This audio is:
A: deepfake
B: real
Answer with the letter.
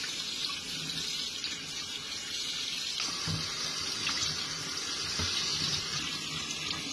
B